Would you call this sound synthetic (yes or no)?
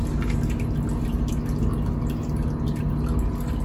no